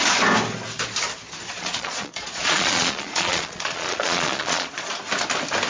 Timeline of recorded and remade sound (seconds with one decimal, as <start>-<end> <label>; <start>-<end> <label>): 0.0-1.5 recorded; 1.5-4.9 remade; 4.9-5.7 recorded